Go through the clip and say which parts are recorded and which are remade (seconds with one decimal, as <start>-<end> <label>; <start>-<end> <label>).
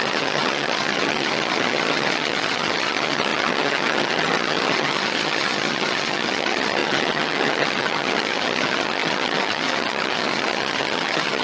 0.0-11.4 remade